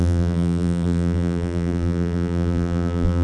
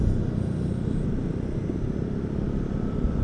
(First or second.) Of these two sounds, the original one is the second